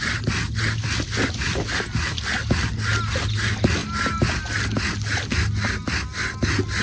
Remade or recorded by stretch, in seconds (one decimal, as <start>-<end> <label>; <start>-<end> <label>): 0.0-6.8 recorded